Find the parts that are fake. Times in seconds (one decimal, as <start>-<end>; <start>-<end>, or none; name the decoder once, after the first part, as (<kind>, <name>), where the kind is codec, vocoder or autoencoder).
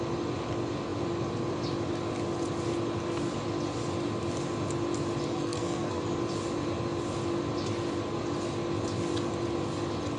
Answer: 5.3-6.0 (codec, SNAC)